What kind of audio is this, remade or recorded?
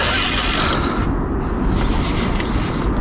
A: recorded